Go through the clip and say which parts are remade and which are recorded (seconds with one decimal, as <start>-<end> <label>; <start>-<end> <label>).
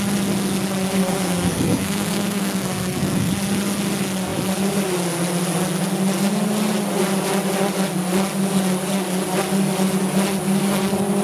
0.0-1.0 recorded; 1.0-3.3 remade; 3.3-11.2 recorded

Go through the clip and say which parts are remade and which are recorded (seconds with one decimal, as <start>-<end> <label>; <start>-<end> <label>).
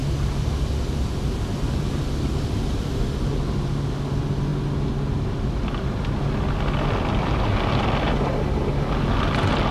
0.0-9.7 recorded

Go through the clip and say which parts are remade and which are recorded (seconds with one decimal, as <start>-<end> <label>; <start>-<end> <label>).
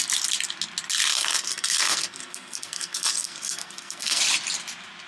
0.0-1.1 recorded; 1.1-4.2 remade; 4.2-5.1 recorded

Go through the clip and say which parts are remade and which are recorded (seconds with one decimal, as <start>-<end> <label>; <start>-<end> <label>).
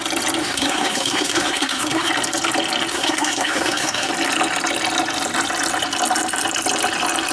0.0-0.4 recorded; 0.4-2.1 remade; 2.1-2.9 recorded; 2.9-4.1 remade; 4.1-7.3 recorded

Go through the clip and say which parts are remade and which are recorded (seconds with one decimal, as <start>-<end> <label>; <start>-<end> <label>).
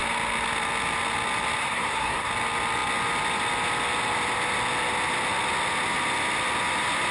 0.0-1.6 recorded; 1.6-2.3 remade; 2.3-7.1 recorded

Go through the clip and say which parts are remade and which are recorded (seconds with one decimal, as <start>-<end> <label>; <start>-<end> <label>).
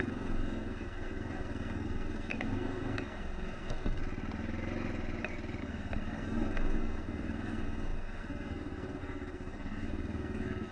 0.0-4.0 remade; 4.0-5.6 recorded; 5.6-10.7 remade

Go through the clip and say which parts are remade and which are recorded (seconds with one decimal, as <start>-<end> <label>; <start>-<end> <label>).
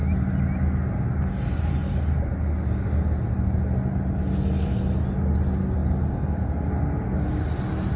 0.0-8.0 recorded